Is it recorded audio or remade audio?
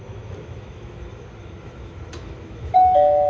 remade